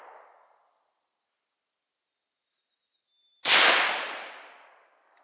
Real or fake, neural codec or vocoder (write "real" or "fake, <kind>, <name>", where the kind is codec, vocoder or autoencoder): real